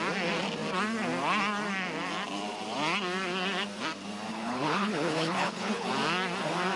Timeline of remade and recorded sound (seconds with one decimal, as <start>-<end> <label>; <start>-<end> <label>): 0.0-4.3 recorded; 4.3-5.9 remade; 5.9-6.8 recorded